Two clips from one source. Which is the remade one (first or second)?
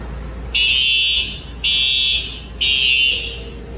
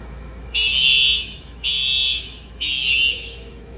second